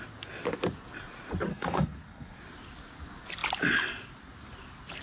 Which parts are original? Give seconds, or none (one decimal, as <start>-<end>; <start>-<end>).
0.0-1.5; 2.4-5.0